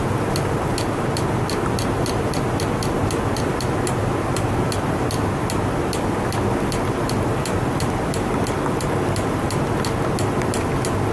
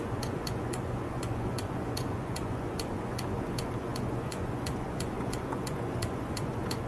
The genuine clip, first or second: first